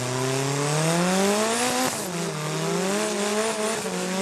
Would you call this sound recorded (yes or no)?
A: yes